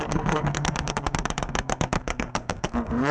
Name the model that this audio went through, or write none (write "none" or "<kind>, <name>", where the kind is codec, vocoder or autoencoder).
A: codec, SNAC